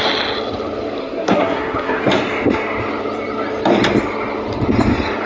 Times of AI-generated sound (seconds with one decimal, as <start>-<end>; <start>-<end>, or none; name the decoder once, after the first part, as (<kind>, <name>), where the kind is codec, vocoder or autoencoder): 1.0-2.0 (codec, SNAC)